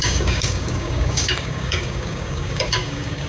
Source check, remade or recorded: remade